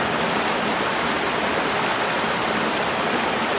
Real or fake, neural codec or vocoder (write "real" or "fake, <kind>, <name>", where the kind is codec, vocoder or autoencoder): real